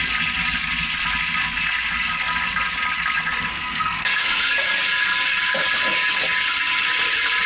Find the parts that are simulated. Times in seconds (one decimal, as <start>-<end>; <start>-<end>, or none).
3.5-4.5